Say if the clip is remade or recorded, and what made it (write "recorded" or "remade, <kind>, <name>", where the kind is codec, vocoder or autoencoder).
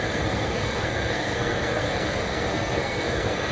remade, codec, SNAC